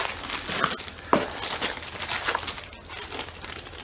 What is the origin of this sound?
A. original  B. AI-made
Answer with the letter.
A